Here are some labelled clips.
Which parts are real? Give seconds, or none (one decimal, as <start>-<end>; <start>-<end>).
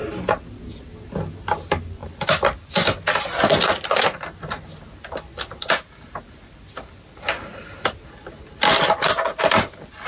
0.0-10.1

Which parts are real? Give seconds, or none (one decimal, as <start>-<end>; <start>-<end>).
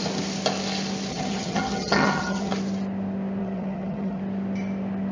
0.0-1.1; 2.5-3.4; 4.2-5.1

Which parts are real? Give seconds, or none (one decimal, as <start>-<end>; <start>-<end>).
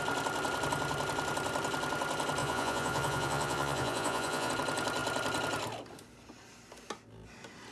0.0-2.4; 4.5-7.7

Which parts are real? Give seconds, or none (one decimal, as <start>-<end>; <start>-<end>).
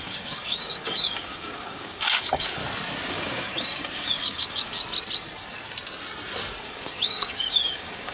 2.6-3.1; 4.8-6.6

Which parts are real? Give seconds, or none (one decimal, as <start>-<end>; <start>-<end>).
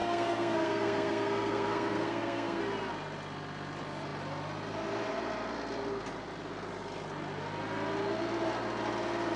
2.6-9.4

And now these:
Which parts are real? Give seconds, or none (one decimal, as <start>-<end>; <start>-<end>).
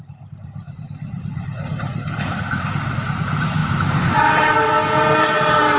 4.7-5.2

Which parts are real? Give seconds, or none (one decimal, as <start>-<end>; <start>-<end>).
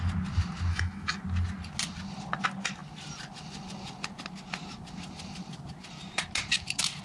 0.0-0.7; 1.2-7.0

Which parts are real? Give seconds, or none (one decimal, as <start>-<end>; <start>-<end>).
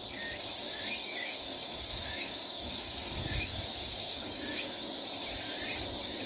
0.0-1.0; 4.8-6.3